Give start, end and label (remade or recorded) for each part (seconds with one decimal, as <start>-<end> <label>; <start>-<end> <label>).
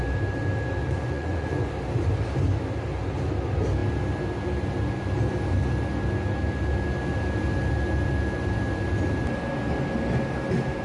0.0-0.8 recorded; 0.8-1.7 remade; 1.7-10.8 recorded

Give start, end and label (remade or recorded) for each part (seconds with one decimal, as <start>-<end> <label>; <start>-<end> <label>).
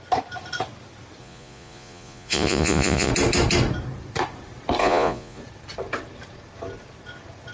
0.0-1.2 recorded; 1.2-3.1 remade; 3.1-4.8 recorded; 4.8-5.4 remade; 5.4-7.5 recorded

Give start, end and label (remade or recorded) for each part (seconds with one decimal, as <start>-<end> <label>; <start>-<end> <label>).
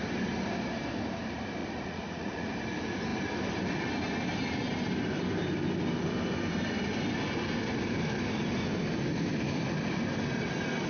0.0-1.6 recorded; 1.6-2.5 remade; 2.5-10.9 recorded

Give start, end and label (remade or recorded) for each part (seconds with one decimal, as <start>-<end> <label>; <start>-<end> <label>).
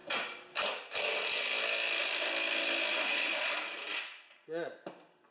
0.0-2.9 recorded; 2.9-3.5 remade; 3.5-3.9 recorded; 3.9-4.7 remade; 4.7-5.3 recorded